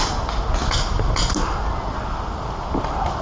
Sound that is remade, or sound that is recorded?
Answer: recorded